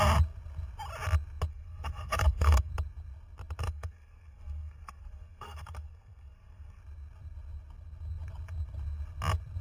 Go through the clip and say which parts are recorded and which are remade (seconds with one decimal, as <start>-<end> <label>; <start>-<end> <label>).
0.0-1.5 recorded; 1.5-2.7 remade; 2.7-3.6 recorded; 3.6-6.8 remade; 6.8-9.6 recorded